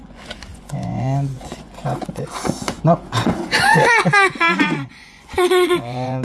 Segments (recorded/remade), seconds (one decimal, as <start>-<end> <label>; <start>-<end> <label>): 0.0-6.2 remade